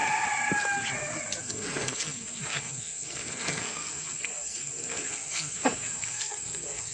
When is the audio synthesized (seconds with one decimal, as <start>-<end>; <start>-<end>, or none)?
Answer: 1.4-6.9